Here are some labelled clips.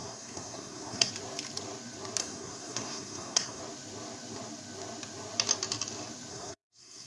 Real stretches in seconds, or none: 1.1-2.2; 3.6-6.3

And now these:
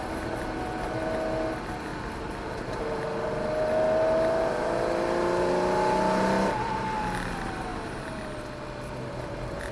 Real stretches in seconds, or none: 0.0-9.7

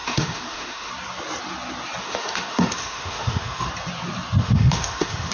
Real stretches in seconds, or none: 0.9-2.0; 3.7-4.4

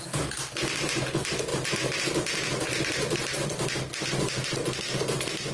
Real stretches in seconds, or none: 0.0-5.5